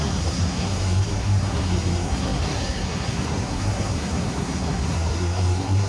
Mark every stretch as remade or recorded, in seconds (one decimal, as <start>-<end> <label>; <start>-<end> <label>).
0.0-5.9 remade